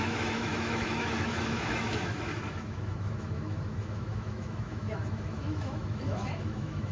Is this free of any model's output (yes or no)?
no